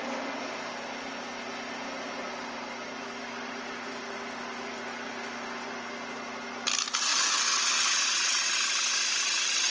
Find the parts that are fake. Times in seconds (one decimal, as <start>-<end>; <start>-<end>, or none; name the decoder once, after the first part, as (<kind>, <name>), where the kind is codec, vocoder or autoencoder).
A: none